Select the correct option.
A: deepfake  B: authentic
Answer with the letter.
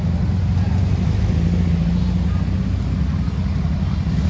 B